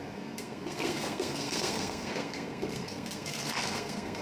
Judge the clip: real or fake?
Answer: fake